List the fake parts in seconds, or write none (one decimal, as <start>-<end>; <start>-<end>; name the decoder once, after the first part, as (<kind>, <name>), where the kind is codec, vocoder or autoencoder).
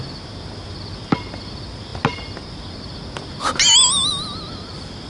4.1-5.1 (vocoder, BigVGAN v2)